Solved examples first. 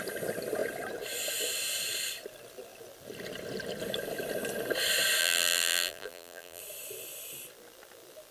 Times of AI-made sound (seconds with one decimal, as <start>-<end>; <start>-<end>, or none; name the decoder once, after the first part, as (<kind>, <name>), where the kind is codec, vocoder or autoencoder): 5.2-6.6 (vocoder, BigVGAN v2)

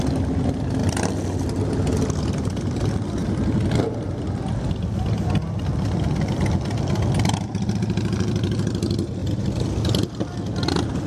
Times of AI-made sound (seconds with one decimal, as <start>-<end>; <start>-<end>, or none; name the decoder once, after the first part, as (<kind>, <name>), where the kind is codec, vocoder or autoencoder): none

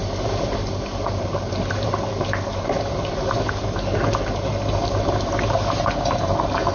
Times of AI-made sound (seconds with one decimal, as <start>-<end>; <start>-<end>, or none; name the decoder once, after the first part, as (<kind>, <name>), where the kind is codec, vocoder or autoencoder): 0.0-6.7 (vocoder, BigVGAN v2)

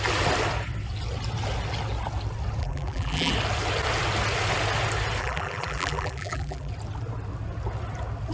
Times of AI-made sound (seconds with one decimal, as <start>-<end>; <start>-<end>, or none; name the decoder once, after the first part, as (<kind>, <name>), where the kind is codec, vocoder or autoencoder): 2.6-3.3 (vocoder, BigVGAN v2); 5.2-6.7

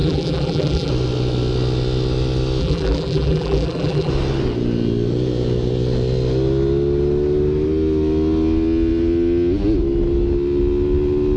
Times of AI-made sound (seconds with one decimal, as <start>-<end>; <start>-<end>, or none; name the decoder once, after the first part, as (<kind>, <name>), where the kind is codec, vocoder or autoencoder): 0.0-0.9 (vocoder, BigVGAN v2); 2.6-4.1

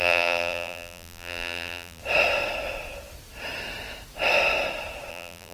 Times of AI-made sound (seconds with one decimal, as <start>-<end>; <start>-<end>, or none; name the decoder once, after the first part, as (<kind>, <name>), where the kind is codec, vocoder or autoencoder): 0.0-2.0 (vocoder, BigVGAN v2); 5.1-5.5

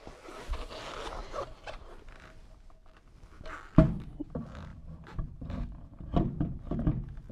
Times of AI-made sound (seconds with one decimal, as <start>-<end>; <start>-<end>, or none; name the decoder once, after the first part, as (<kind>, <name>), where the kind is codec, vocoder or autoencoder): 1.2-1.9 (vocoder, BigVGAN v2); 4.7-6.6